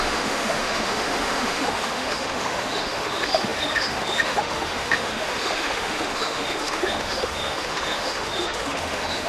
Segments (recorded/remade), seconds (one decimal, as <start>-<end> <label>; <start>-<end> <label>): 0.0-9.3 remade